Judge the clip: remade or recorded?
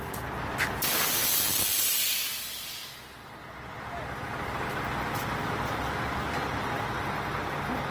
recorded